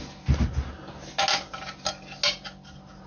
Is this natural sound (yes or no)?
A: yes